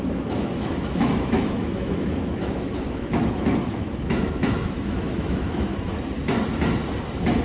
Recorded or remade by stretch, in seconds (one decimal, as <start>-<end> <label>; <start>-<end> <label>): 0.0-5.7 remade; 5.7-7.4 recorded